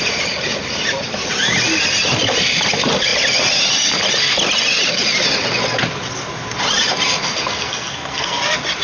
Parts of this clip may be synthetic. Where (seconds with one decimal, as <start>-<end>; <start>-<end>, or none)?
7.2-8.4